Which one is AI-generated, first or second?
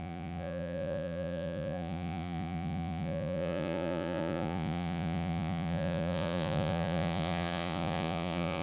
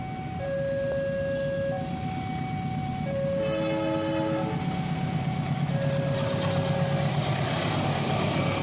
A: first